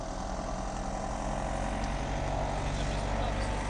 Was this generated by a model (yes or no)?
no